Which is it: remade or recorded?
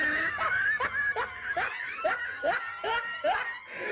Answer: recorded